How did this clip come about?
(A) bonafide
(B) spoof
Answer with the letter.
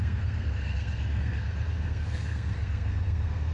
B